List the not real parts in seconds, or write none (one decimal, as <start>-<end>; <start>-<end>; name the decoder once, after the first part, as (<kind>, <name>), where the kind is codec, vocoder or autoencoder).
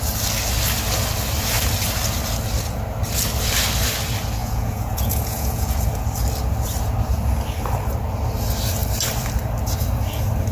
4.4-5.9 (vocoder, Vocos)